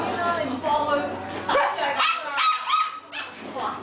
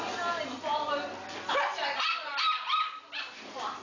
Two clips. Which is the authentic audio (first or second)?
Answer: first